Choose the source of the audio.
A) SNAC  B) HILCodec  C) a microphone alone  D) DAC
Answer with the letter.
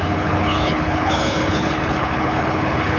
B